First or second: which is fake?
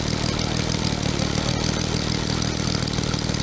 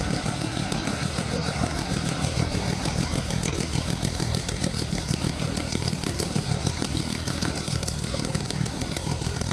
second